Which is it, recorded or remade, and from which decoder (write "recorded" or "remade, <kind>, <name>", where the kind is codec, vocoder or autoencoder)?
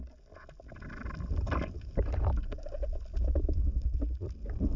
recorded